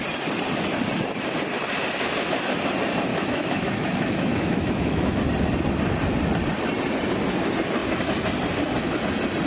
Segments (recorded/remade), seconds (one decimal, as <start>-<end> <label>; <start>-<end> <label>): 0.0-3.1 recorded; 3.1-5.2 remade; 5.2-9.5 recorded